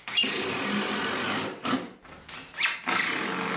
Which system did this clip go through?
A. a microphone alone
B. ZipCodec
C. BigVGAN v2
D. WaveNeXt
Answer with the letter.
A